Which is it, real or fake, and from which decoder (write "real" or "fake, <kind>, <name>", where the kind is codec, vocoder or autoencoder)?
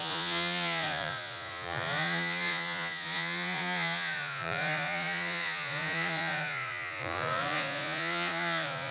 fake, vocoder, Vocos